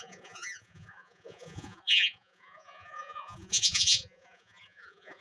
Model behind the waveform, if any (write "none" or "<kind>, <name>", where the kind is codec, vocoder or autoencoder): vocoder, Vocos